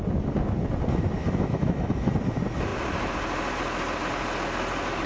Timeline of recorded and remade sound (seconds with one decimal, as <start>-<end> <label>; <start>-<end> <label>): 0.0-1.2 recorded; 1.2-2.1 remade; 2.1-5.1 recorded